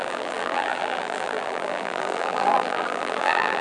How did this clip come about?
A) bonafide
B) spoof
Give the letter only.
B